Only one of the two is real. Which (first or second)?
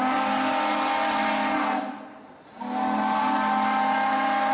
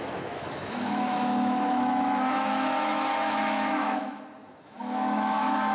first